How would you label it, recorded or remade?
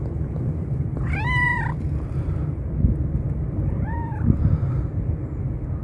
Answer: remade